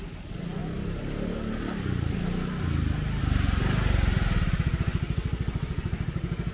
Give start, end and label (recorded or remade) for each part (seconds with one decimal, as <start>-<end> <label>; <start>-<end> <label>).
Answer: 0.0-6.5 recorded